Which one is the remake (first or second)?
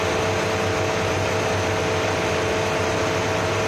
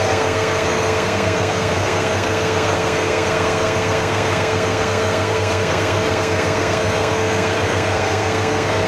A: second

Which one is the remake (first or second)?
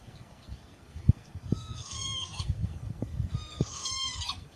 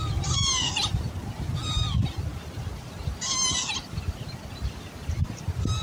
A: first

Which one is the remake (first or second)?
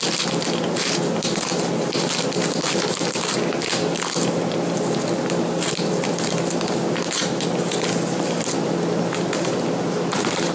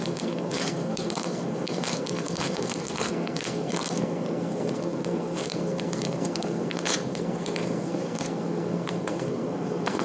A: second